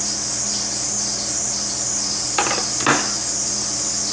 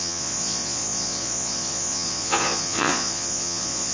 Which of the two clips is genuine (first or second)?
first